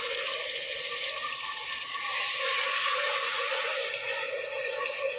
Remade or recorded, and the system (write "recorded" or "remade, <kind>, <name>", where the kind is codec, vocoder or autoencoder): recorded